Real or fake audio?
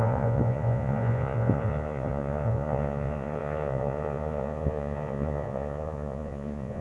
fake